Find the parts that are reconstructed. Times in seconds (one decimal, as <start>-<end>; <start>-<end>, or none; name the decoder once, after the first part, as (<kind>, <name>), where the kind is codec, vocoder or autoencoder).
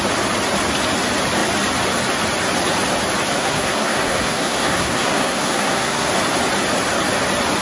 3.4-6.1 (codec, SNAC)